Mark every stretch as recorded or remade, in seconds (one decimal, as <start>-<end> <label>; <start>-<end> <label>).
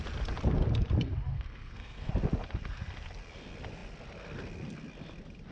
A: 0.0-1.3 recorded; 1.3-2.1 remade; 2.1-5.5 recorded